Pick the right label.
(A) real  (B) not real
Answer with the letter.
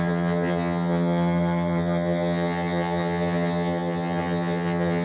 B